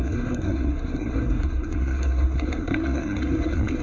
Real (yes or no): no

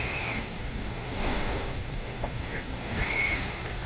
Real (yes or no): no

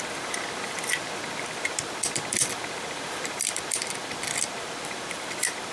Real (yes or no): no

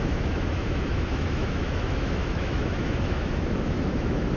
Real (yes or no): no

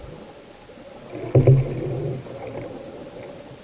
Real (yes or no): yes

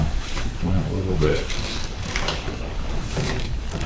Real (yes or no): no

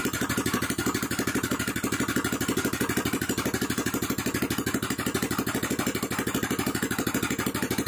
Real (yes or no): no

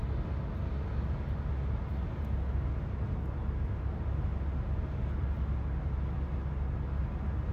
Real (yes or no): yes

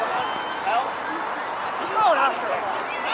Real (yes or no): yes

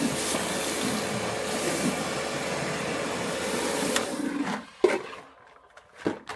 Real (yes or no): yes